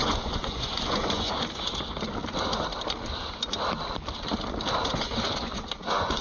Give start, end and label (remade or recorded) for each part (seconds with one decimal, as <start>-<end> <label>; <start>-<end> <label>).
0.0-1.3 remade; 1.3-4.8 recorded; 4.8-6.2 remade